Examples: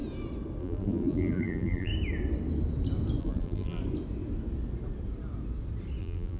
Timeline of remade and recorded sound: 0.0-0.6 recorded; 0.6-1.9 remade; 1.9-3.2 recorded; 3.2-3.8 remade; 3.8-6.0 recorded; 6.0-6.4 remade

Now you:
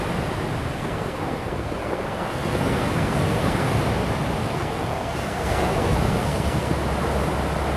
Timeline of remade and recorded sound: 0.0-0.6 recorded; 0.6-3.8 remade; 3.8-4.4 recorded; 4.4-6.7 remade; 6.7-7.8 recorded

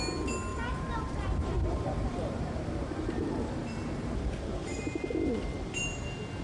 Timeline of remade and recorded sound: 0.0-0.5 recorded; 0.5-2.4 remade; 2.4-3.6 recorded; 3.6-4.8 remade; 4.8-6.4 recorded

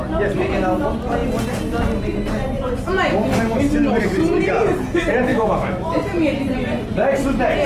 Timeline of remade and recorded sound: 0.0-5.3 recorded; 5.3-5.9 remade; 5.9-7.7 recorded

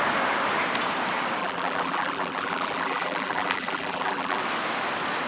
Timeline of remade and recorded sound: 0.0-1.4 recorded; 1.4-4.4 remade; 4.4-5.3 recorded

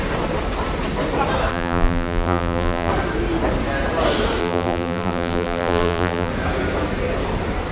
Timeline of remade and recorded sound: 0.0-1.5 recorded; 1.5-2.9 remade; 2.9-4.4 recorded; 4.4-6.3 remade; 6.3-7.7 recorded